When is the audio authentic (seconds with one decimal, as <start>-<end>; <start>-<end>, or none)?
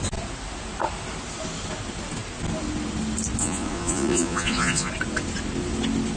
0.0-3.4; 4.9-6.2